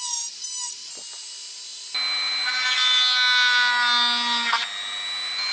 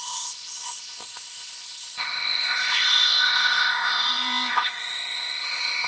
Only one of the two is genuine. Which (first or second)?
first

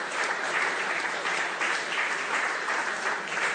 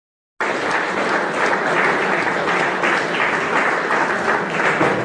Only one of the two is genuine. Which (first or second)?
second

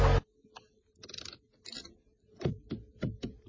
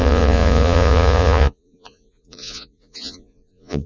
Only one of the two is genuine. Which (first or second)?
first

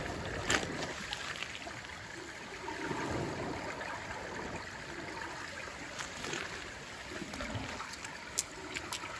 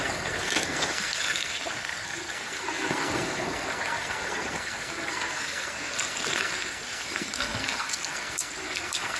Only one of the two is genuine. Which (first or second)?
first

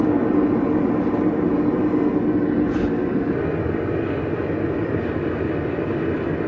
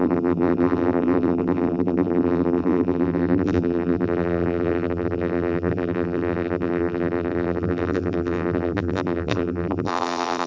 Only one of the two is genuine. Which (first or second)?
first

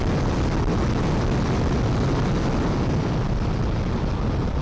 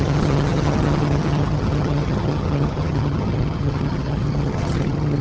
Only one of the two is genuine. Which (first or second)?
first